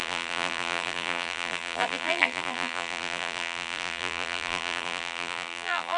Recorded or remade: remade